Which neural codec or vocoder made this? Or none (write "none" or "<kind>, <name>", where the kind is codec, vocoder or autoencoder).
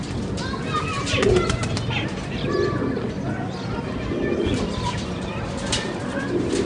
none